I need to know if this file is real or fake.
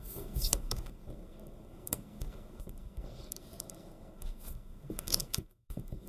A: fake